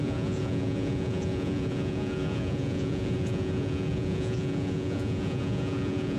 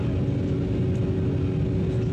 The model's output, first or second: first